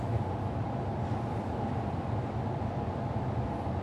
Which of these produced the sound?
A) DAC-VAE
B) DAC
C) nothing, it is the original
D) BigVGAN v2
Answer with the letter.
C